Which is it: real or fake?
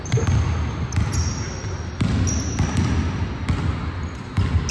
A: real